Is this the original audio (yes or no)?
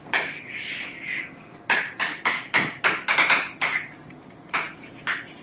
yes